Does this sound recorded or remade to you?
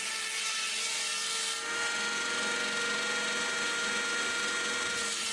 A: recorded